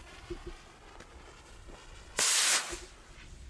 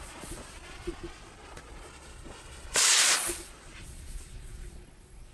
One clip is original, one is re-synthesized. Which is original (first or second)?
first